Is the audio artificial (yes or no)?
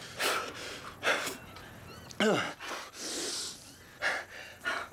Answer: no